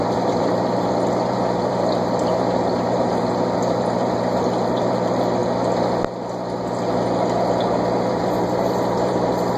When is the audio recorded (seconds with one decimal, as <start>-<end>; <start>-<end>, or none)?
5.4-8.1